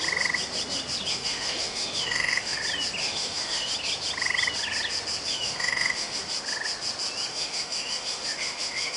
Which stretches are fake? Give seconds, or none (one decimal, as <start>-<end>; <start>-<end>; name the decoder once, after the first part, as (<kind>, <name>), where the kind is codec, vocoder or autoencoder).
1.1-2.6 (autoencoder, DAC-VAE); 3.0-3.7; 5.3-6.2; 7.3-9.0